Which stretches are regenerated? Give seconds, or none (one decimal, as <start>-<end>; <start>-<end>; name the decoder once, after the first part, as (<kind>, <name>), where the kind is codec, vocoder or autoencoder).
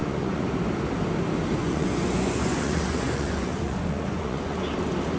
0.0-0.5 (vocoder, Vocos); 1.6-4.7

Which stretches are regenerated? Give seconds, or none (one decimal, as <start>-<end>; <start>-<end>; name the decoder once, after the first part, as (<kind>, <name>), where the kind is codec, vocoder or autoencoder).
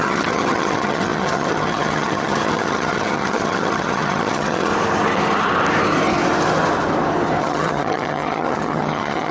0.0-4.7 (vocoder, HiFi-GAN); 7.4-9.3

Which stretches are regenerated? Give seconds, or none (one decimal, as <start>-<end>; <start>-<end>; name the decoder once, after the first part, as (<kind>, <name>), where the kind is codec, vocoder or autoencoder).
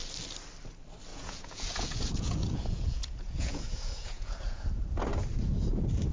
1.1-4.8 (vocoder, Vocos)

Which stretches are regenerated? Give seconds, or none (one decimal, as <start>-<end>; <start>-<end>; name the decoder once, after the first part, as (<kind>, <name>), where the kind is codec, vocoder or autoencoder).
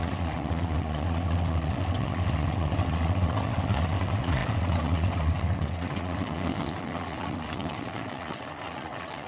0.0-9.3 (vocoder, WaveNeXt)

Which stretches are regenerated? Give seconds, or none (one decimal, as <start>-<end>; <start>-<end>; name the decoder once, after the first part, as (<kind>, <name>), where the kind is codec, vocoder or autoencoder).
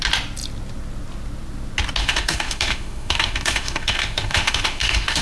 2.0-5.2 (autoencoder, DAC-VAE)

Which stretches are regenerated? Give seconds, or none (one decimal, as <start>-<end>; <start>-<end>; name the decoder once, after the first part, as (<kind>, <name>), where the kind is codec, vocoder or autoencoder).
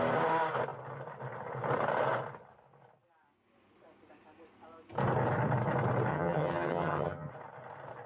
6.1-7.3 (vocoder, HiFi-GAN)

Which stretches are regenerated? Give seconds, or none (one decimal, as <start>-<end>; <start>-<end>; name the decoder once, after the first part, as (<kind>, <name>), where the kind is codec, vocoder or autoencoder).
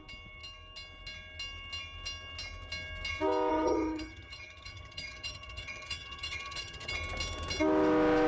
3.5-6.9 (vocoder, HiFi-GAN)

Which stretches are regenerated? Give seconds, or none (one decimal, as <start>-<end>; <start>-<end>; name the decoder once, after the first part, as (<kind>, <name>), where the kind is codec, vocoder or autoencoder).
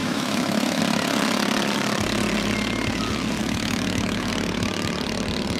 0.0-0.8 (autoencoder, DAC-VAE); 3.4-4.3